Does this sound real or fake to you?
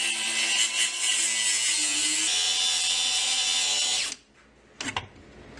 real